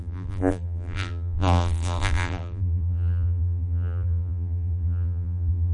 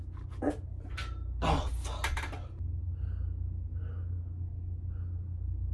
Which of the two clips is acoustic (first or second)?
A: second